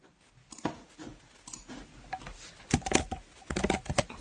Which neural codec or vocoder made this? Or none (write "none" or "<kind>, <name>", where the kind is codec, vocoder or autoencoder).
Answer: none